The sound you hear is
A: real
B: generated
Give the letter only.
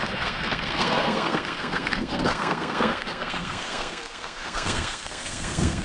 B